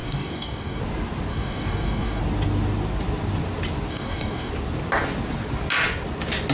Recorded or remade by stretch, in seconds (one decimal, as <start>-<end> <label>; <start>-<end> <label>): 0.0-0.8 remade; 0.8-1.3 recorded; 1.3-2.2 remade; 2.2-3.9 recorded; 3.9-4.5 remade; 4.5-6.5 recorded